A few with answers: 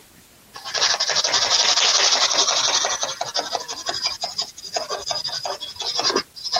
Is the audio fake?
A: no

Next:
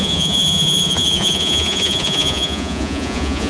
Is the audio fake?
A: yes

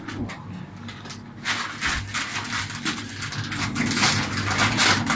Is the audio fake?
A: no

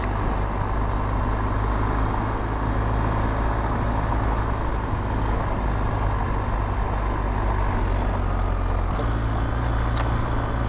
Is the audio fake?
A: no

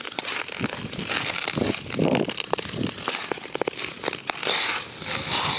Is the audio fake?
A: no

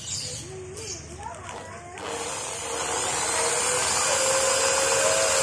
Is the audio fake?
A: no